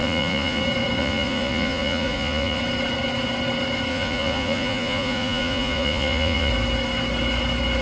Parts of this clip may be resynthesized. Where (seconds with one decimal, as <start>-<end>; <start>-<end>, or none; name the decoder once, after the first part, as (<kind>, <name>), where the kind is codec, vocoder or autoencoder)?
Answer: 0.0-0.6 (vocoder, Vocos); 1.0-2.6; 3.9-6.5